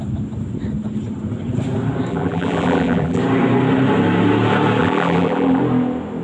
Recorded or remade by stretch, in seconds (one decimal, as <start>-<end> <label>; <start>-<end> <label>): 0.0-2.1 recorded; 2.1-3.2 remade; 3.2-4.8 recorded; 4.8-5.6 remade; 5.6-6.2 recorded